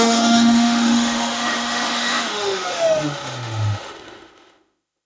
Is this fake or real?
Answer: fake